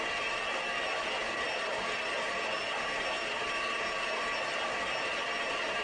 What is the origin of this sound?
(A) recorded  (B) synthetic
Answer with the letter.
A